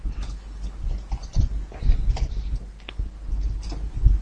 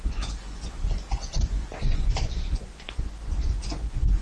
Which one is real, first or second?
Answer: first